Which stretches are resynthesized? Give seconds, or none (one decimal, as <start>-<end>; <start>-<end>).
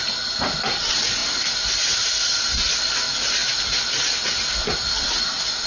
none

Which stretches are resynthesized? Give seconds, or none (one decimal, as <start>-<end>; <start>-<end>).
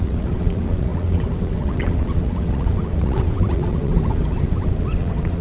0.0-5.4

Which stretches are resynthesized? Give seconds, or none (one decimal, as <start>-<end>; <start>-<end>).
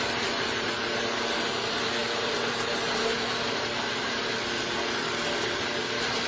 none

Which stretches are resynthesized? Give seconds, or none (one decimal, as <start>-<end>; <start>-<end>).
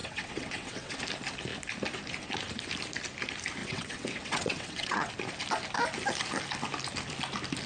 0.0-1.0; 3.6-5.1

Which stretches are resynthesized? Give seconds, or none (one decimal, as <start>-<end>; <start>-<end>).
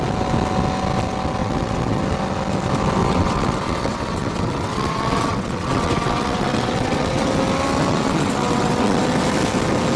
1.4-2.0; 3.0-7.3; 7.9-9.0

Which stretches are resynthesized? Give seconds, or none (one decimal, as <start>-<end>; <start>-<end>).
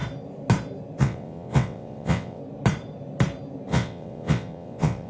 1.0-2.4; 3.7-5.1